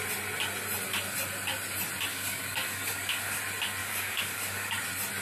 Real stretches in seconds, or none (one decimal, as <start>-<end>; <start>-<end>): 0.0-2.1; 3.4-3.8; 4.8-5.2